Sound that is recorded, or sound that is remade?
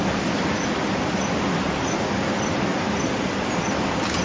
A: recorded